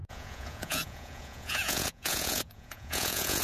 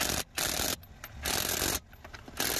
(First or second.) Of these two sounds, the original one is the second